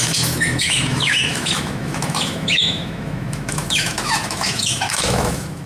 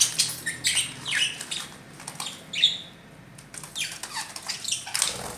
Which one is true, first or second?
second